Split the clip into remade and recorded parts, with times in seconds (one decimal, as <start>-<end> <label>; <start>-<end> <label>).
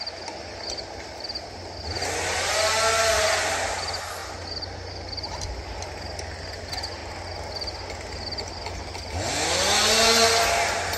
0.0-11.0 recorded